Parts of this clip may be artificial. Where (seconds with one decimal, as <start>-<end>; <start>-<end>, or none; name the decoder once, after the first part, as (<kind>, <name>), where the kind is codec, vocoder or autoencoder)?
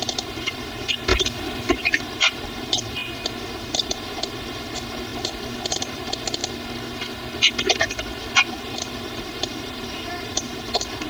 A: 0.0-1.1 (vocoder, BigVGAN v2); 1.7-3.0; 3.6-5.1; 5.8-6.4; 8.6-11.1